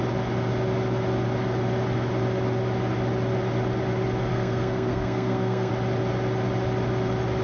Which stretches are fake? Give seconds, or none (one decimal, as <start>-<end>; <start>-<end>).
4.3-5.7